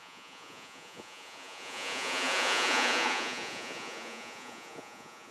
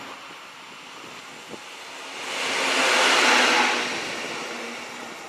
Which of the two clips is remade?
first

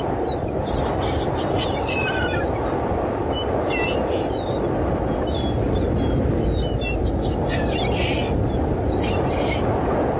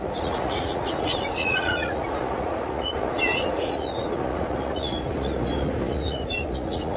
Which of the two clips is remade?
second